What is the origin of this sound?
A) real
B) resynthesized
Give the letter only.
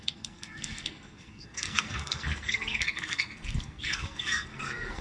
B